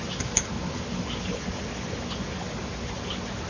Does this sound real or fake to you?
real